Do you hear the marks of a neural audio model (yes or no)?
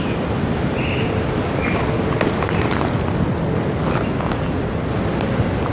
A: no